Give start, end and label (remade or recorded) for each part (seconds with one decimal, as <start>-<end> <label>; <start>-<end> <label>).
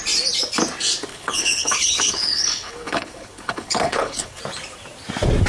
0.0-1.1 recorded; 1.1-4.4 remade; 4.4-5.5 recorded